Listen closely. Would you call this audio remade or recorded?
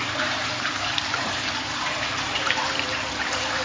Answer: remade